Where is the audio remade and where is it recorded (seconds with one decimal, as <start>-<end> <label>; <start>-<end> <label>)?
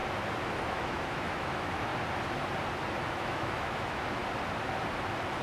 0.0-0.7 recorded; 0.7-1.9 remade; 1.9-3.1 recorded; 3.1-4.2 remade; 4.2-5.4 recorded